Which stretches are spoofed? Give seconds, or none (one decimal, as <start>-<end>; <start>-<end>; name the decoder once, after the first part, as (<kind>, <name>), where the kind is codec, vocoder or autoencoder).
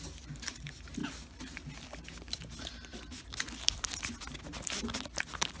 none